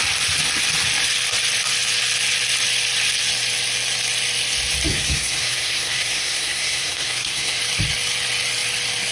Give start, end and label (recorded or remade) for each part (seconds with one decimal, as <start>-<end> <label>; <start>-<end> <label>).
0.0-4.9 recorded; 4.9-7.6 remade; 7.6-9.1 recorded